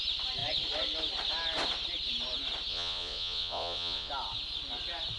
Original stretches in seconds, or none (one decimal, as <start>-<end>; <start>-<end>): 0.0-2.7; 4.1-5.2